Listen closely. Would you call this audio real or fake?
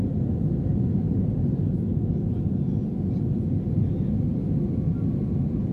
real